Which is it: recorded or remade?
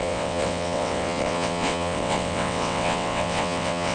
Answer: remade